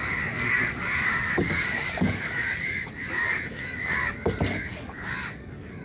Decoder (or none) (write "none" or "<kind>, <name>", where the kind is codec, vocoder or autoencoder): codec, DAC